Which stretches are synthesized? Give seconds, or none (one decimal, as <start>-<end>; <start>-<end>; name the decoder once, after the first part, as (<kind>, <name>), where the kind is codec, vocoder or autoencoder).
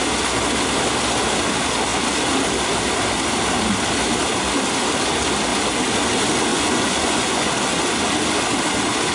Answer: 6.5-7.5 (vocoder, Vocos)